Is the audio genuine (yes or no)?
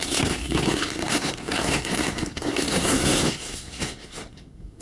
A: no